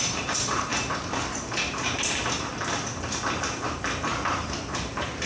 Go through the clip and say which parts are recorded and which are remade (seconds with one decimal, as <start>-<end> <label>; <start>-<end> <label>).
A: 0.0-0.7 remade; 0.7-1.3 recorded; 1.3-2.5 remade; 2.5-4.3 recorded; 4.3-5.3 remade